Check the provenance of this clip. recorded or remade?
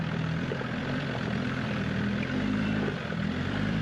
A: remade